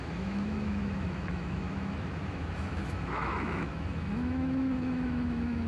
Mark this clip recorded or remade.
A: remade